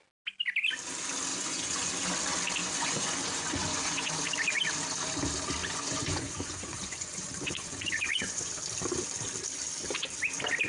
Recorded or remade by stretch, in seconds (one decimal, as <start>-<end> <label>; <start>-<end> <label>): 0.0-1.3 recorded; 1.3-1.9 remade; 1.9-2.6 recorded; 2.6-4.1 remade; 4.1-5.6 recorded; 5.6-8.5 remade; 8.5-10.7 recorded